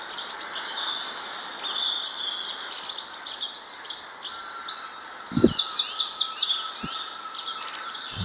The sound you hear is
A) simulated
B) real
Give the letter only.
B